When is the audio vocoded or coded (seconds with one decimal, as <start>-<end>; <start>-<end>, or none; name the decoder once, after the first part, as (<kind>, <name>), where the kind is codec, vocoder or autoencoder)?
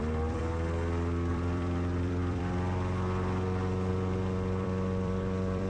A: 0.0-0.4 (vocoder, BigVGAN v2); 1.3-5.7